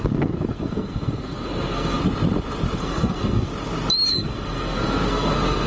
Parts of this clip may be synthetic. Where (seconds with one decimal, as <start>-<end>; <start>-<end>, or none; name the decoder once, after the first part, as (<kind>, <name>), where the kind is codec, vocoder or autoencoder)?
0.0-2.0 (codec, SNAC); 2.8-3.5; 4.1-5.7